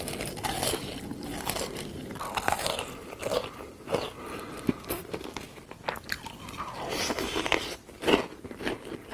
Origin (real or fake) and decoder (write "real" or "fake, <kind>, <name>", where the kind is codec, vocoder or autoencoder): real